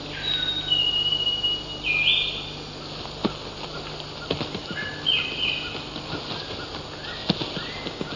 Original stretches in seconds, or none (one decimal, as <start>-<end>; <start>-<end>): 0.0-8.2